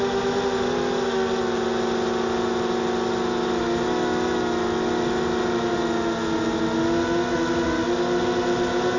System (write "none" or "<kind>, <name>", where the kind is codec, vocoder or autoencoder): none